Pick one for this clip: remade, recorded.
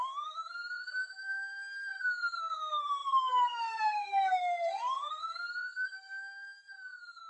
remade